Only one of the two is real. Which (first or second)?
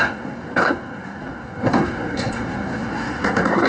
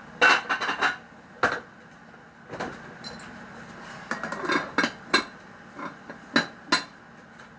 second